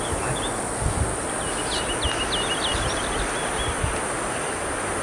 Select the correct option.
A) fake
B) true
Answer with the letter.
B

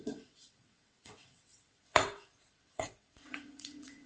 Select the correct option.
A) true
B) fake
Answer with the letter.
B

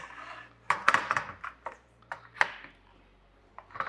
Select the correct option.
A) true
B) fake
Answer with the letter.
B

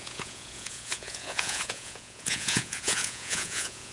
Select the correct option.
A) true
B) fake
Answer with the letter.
B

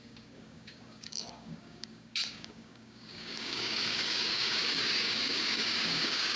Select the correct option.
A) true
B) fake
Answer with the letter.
B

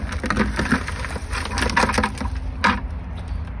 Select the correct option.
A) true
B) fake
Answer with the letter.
A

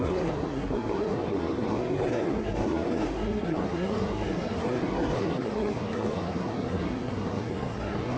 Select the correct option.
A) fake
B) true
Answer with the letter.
A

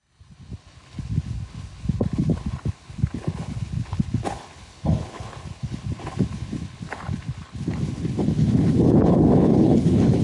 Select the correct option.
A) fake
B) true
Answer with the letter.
A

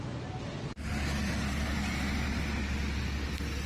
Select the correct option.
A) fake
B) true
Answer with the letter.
B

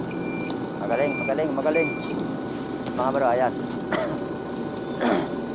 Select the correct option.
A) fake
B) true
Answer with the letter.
B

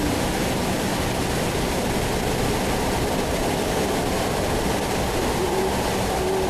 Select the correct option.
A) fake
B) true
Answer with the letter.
B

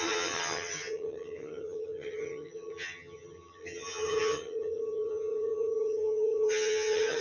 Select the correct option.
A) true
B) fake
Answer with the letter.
B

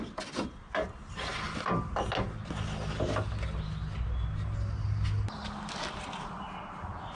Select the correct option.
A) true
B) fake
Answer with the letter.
A